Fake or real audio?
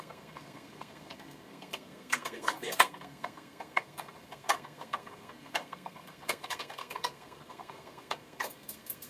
fake